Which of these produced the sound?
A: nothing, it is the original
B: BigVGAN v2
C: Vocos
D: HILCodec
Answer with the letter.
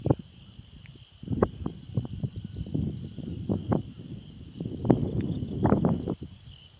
B